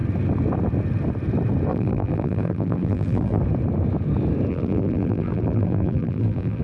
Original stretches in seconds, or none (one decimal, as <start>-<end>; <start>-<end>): 0.0-1.7; 3.4-4.5